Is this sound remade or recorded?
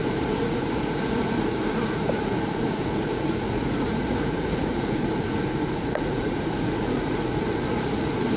remade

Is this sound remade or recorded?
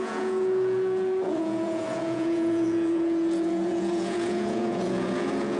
remade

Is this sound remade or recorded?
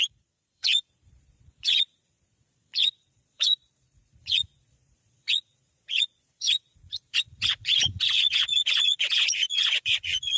remade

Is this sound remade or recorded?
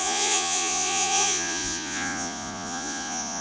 remade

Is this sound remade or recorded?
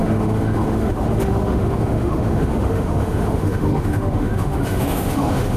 remade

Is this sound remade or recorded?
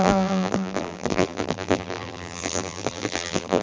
remade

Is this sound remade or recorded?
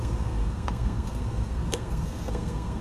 remade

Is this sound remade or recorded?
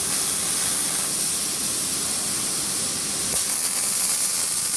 recorded